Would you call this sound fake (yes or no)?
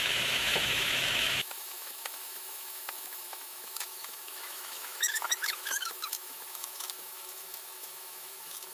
yes